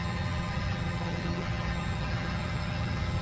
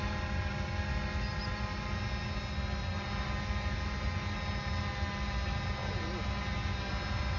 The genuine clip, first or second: second